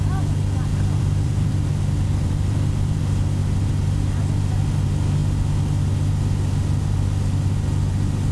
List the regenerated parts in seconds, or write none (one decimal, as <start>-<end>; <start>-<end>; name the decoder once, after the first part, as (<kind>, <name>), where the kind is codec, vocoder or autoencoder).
0.7-3.0 (vocoder, BigVGAN v2)